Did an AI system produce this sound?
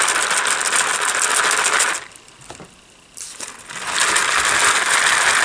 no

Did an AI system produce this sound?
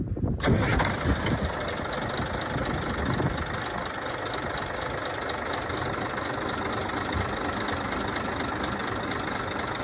no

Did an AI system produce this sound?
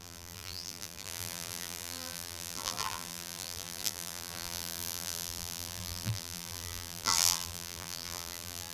yes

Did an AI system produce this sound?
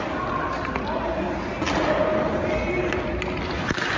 no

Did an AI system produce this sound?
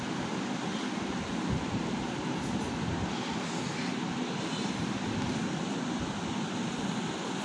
no